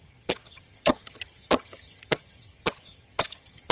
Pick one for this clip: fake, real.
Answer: fake